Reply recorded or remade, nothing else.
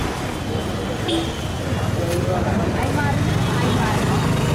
recorded